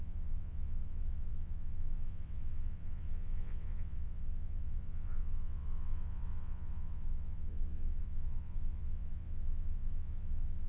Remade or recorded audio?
remade